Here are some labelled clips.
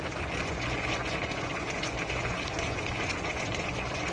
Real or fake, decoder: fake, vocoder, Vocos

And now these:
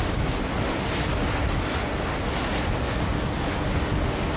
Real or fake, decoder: real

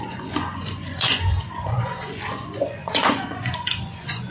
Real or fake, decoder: fake, vocoder, Vocos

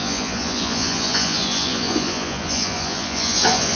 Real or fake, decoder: fake, vocoder, Vocos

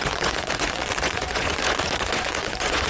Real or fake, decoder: fake, vocoder, Vocos